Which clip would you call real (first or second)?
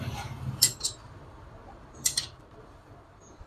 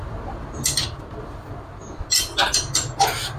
second